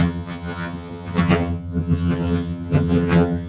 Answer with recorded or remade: remade